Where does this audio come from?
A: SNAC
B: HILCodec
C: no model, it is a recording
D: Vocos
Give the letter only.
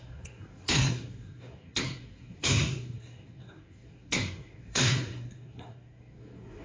A